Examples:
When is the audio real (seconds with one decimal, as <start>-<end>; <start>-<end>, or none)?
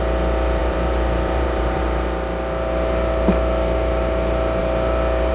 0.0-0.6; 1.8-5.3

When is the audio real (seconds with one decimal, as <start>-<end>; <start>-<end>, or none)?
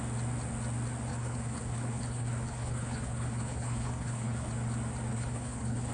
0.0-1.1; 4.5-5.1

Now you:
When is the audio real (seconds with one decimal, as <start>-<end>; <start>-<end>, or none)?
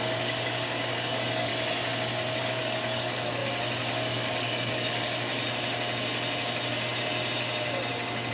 1.5-2.4; 3.4-4.1; 5.3-8.3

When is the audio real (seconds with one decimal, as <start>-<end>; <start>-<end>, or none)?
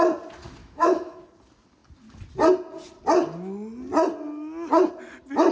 0.0-0.6; 1.2-5.5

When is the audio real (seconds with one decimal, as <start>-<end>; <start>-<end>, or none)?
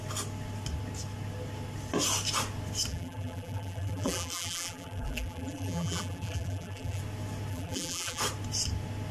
0.0-2.9; 7.0-7.5; 8.2-9.1